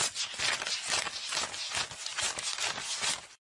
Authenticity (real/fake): real